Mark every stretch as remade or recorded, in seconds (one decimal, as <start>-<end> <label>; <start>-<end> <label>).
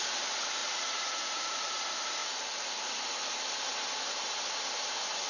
0.0-0.6 recorded; 0.6-1.7 remade; 1.7-5.3 recorded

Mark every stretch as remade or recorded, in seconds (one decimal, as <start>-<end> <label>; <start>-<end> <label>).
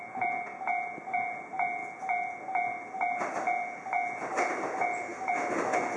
0.0-6.0 recorded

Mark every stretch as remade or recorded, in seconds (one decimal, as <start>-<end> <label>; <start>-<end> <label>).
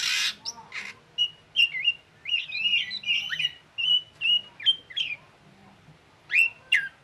0.0-7.0 recorded